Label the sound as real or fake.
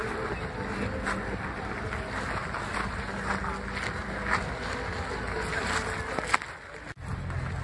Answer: real